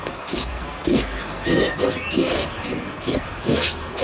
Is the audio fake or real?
fake